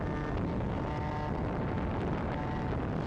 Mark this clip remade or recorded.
recorded